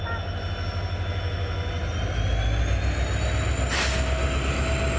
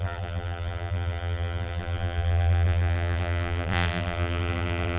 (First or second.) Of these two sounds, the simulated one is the second